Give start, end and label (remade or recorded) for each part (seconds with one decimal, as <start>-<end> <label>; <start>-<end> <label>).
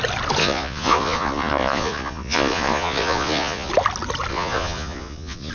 0.0-0.4 recorded; 0.4-3.7 remade; 3.7-4.3 recorded; 4.3-5.5 remade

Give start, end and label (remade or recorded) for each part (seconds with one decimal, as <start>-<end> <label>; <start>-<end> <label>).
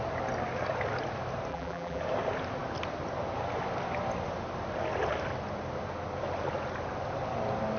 0.0-1.5 recorded; 1.5-2.0 remade; 2.0-7.8 recorded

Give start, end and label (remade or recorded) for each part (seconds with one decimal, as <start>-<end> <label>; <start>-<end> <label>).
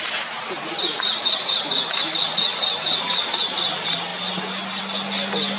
0.0-5.6 recorded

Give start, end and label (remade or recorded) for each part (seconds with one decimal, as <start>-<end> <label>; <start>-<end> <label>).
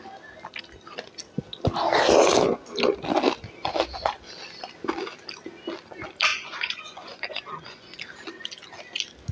0.0-6.3 recorded; 6.3-8.0 remade; 8.0-9.3 recorded